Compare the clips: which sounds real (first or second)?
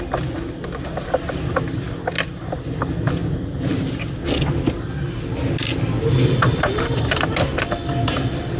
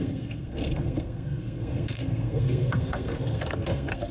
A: first